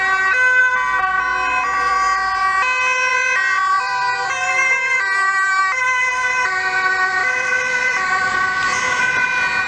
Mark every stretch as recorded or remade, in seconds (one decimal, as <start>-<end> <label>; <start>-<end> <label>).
0.0-0.6 recorded; 0.6-2.4 remade; 2.4-3.1 recorded; 3.1-5.0 remade; 5.0-7.2 recorded; 7.2-8.3 remade; 8.3-9.7 recorded